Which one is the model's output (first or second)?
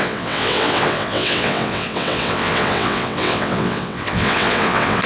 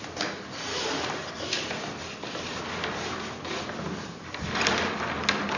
first